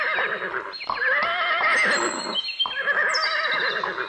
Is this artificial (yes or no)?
no